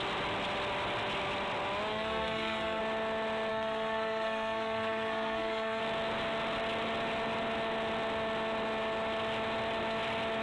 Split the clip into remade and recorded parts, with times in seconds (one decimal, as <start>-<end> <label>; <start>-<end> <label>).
0.0-1.9 recorded; 1.9-2.8 remade; 2.8-3.5 recorded; 3.5-5.8 remade; 5.8-10.4 recorded

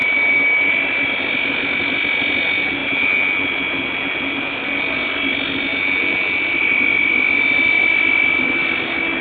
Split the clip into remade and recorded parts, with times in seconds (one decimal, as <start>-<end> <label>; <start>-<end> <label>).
0.0-9.2 recorded

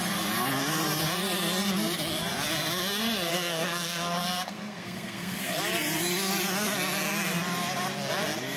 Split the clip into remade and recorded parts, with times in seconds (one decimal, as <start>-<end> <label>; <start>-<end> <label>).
0.0-3.3 recorded; 3.3-5.6 remade; 5.6-8.6 recorded

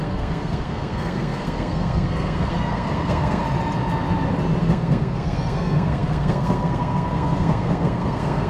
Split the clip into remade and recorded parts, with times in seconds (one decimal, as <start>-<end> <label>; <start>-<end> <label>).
0.0-3.4 remade; 3.4-4.6 recorded; 4.6-8.5 remade

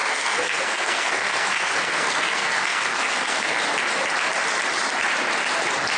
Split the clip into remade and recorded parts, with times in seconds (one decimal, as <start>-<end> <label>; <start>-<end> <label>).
0.0-3.6 remade; 3.6-6.0 recorded